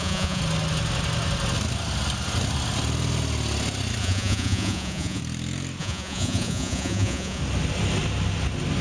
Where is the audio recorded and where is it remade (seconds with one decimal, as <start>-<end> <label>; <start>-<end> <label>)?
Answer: 0.0-0.4 remade; 0.4-4.0 recorded; 4.0-5.2 remade; 5.2-5.8 recorded; 5.8-7.4 remade; 7.4-8.8 recorded